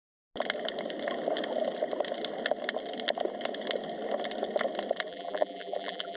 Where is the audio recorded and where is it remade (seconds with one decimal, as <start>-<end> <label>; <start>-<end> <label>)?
0.0-5.1 recorded; 5.1-6.2 remade